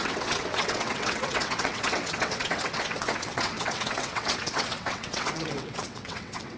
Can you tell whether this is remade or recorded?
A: remade